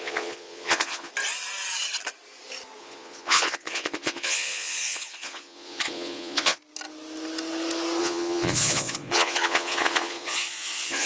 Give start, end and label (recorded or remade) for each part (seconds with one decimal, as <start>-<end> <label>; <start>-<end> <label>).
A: 0.0-1.1 remade; 1.1-2.8 recorded; 2.8-6.6 remade; 6.6-8.0 recorded; 8.0-11.1 remade